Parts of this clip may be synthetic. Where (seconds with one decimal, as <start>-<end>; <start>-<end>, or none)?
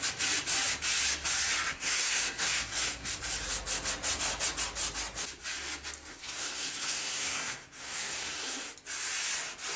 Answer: 1.7-3.2; 6.1-8.7